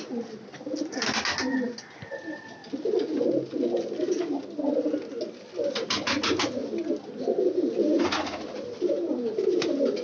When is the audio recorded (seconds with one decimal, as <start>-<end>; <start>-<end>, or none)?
0.0-6.6; 9.1-10.0